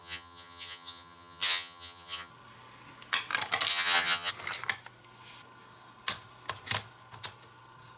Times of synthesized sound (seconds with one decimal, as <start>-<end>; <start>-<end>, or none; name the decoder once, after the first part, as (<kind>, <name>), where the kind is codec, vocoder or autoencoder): 0.0-2.3 (vocoder, HiFi-GAN); 3.7-4.3